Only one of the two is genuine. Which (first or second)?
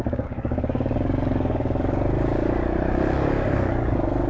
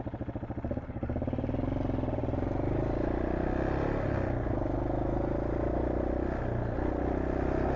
second